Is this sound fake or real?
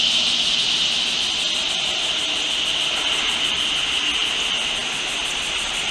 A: real